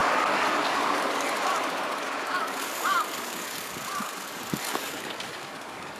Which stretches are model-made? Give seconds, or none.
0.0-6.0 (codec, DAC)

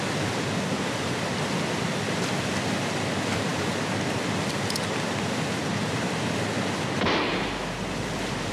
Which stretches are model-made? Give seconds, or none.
none

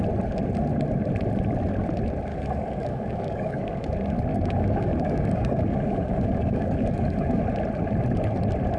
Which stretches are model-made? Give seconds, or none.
2.3-3.9 (codec, DAC); 4.3-7.4